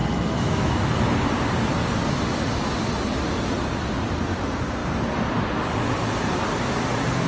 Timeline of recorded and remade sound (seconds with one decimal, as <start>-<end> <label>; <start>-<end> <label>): 0.0-1.0 remade; 1.0-7.3 recorded